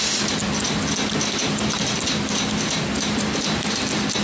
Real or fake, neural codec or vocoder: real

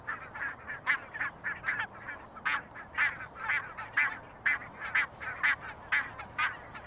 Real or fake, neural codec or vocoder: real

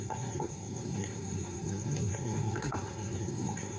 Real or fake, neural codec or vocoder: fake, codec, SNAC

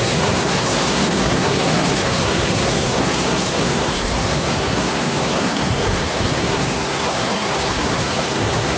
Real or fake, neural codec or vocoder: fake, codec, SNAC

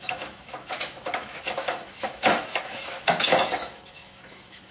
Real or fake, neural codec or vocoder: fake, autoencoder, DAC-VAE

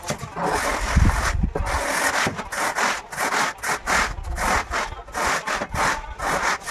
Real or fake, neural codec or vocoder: real